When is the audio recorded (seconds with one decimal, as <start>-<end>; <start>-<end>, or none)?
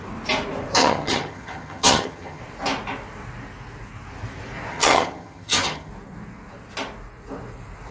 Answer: 0.0-0.8; 2.4-4.7; 5.9-7.9